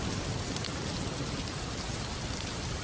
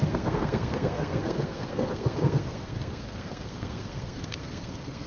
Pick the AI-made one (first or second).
second